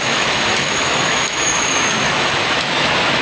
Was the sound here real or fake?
fake